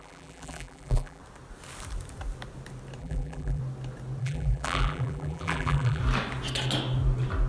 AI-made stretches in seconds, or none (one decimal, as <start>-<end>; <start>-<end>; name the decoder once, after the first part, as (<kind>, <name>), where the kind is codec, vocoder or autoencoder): 0.0-1.2 (vocoder, BigVGAN v2); 3.0-3.6; 4.2-6.0